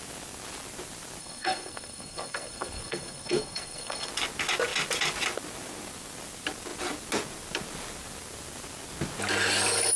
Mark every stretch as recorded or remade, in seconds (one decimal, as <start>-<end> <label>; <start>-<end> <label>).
0.0-1.2 recorded; 1.2-4.1 remade; 4.1-10.0 recorded